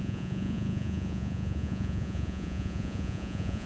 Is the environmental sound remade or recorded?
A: remade